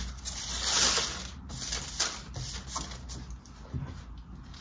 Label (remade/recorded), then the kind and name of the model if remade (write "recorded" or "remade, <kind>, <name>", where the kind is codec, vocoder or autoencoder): recorded